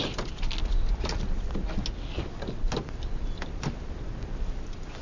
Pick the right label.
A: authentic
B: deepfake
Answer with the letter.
A